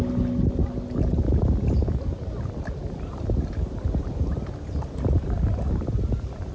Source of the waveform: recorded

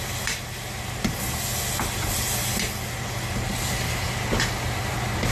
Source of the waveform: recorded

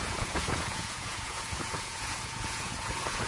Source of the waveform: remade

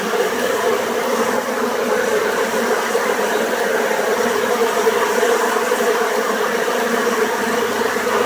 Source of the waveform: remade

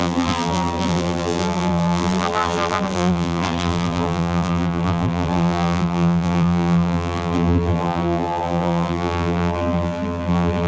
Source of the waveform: remade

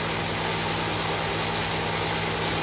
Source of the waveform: recorded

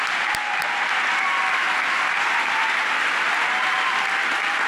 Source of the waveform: recorded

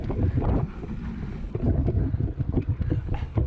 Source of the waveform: recorded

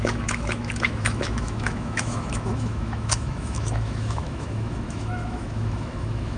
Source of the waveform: remade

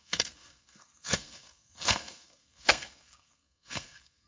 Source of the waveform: remade